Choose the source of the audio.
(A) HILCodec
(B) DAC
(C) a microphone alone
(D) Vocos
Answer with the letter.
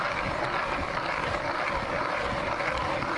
C